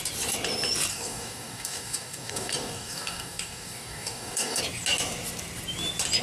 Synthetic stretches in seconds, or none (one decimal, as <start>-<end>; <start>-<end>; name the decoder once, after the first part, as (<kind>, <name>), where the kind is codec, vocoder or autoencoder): 0.9-4.6 (codec, DAC)